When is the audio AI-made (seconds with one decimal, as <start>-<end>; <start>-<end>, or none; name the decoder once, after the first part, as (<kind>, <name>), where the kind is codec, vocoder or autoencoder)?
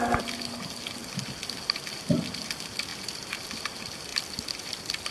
none